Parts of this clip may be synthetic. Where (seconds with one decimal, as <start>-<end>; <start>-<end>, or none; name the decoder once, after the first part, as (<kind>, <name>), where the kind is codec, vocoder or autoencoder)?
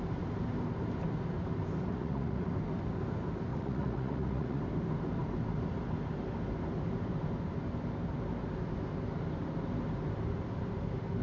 1.9-2.5 (vocoder, Vocos); 3.5-4.6